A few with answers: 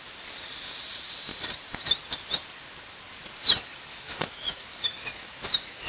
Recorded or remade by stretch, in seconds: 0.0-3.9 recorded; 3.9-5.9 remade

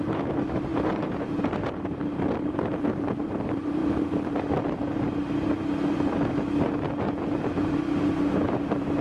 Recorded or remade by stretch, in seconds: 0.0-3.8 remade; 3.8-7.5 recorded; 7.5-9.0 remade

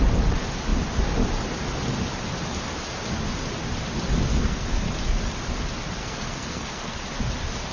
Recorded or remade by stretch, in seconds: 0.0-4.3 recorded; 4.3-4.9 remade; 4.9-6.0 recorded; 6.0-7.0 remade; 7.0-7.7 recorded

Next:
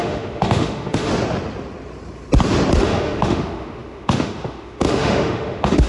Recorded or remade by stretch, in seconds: 0.0-1.1 remade; 1.1-2.8 recorded; 2.8-5.9 remade